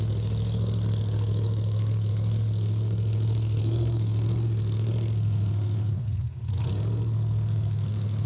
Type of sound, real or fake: fake